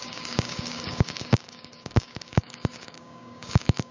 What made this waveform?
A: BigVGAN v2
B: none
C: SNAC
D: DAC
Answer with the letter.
D